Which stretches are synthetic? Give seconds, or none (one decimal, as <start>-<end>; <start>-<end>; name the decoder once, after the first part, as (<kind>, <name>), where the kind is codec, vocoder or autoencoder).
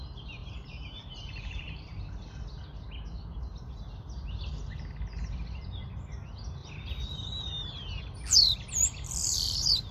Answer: 0.4-2.1 (vocoder, BigVGAN v2); 9.2-9.9